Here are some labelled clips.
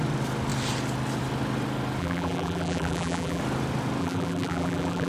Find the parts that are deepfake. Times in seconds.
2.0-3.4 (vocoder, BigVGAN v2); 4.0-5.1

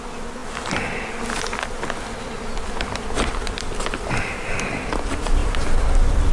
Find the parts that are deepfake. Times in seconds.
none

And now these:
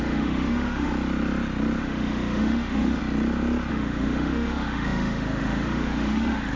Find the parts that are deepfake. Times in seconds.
0.0-0.9 (autoencoder, DAC-VAE); 1.8-3.0; 3.7-6.6

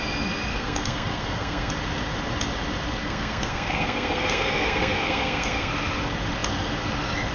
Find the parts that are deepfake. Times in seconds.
0.5-1.7 (codec, SNAC); 3.0-5.7

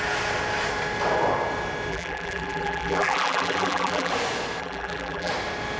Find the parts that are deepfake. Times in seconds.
1.9-4.1 (vocoder, BigVGAN v2); 4.6-5.3